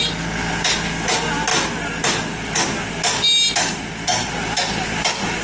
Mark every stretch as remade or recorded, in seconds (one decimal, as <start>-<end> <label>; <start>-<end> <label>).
0.0-5.4 recorded